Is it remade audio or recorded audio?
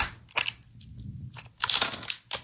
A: recorded